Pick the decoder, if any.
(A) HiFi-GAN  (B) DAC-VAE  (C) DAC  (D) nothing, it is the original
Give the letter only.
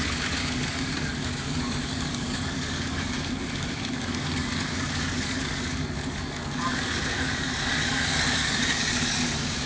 C